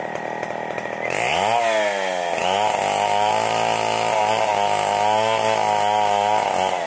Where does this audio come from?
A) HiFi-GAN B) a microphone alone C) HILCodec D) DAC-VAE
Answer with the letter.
B